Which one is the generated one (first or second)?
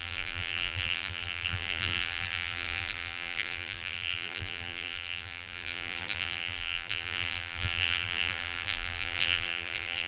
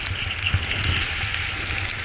first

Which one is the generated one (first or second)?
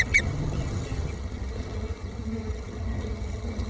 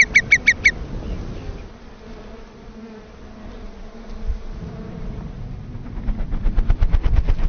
first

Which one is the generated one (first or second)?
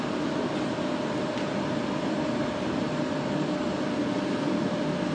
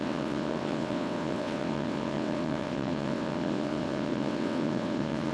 second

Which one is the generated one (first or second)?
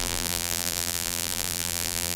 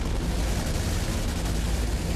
first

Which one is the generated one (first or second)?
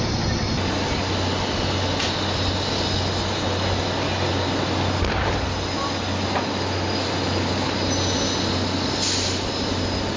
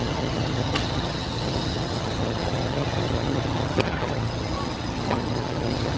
second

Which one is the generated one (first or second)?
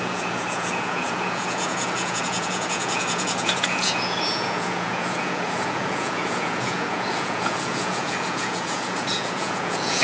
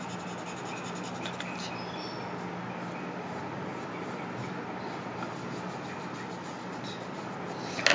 first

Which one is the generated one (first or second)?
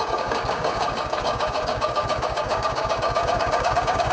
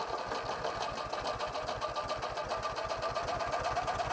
first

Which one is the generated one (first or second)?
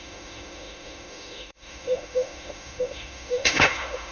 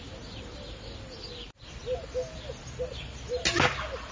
first